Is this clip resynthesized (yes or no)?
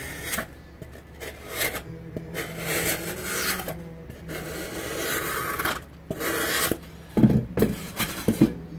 no